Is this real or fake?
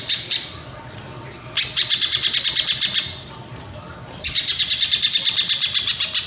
fake